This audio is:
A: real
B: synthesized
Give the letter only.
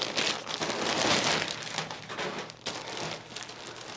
A